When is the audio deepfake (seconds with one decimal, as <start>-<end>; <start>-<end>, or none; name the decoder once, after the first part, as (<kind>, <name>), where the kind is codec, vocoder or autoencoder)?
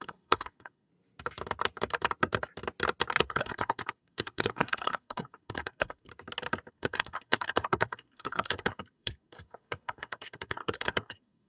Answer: 0.0-0.9 (codec, SNAC); 3.2-6.1; 6.7-11.5